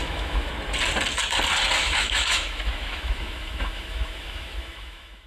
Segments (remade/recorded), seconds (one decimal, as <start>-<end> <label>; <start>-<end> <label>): 0.0-0.5 remade; 0.5-1.8 recorded; 1.8-5.3 remade